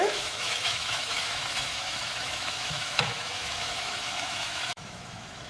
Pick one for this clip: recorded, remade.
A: remade